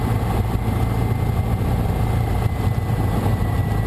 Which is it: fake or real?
real